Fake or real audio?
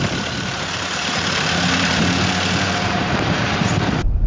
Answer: fake